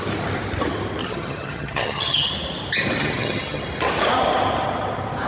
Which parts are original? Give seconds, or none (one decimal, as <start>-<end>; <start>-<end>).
0.0-1.0; 2.3-3.0; 3.6-5.3